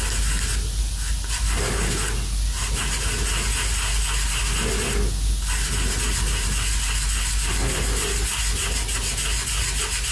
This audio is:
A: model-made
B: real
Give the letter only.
B